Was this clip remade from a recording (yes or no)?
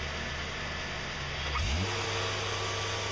no